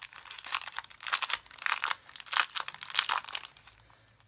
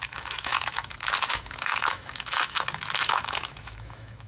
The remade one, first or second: second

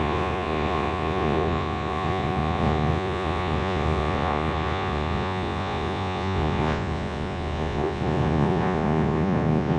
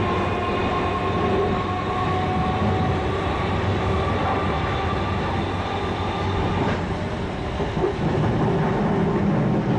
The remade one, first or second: first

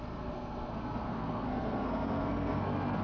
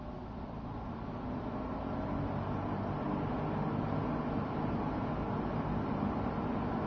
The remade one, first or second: first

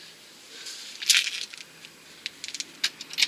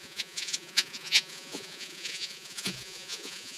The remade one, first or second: second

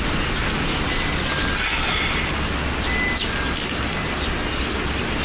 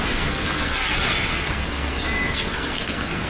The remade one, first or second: second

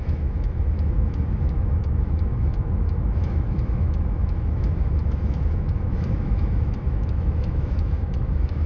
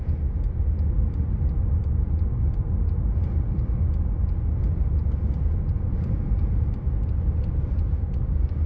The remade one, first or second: first